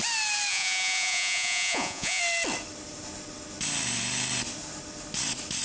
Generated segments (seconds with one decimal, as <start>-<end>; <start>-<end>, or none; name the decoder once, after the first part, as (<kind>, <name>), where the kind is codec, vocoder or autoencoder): 0.5-2.2 (vocoder, Vocos)